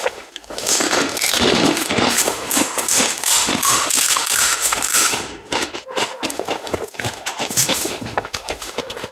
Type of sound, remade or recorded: remade